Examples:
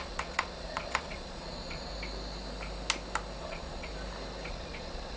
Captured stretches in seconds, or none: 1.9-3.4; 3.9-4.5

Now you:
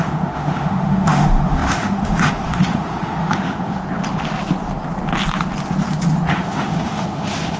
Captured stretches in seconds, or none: 3.8-6.3

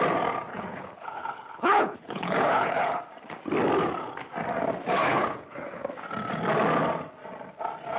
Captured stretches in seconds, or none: 0.0-0.5; 3.0-5.0; 5.8-8.0

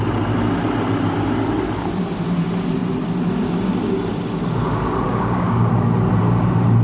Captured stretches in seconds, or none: 0.0-5.1; 5.7-6.8

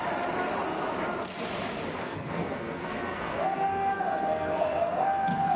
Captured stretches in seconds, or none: 0.0-2.0

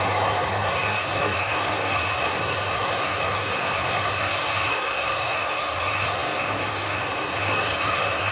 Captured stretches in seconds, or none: none

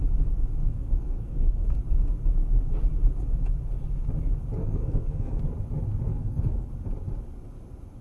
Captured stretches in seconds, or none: 0.0-0.6; 1.8-4.6; 5.4-6.1; 6.7-8.0